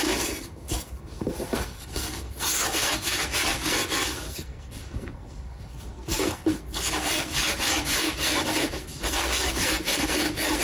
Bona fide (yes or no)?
no